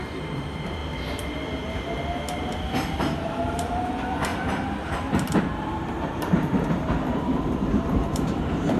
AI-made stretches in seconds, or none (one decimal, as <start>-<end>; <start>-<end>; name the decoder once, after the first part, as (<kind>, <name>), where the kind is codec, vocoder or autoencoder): 0.0-0.8 (vocoder, BigVGAN v2); 3.0-8.8